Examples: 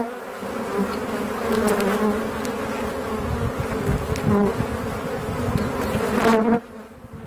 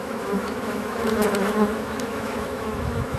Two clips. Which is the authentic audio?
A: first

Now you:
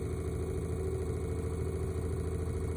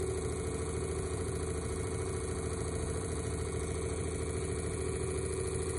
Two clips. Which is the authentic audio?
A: first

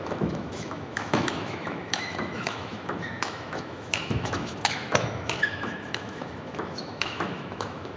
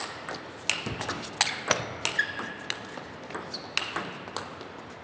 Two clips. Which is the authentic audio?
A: second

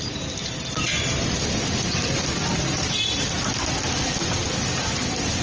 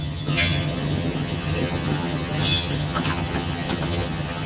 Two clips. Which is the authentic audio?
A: first